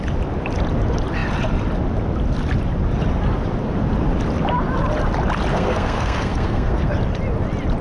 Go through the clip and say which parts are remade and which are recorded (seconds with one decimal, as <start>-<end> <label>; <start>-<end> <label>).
0.0-5.5 recorded; 5.5-6.9 remade; 6.9-7.8 recorded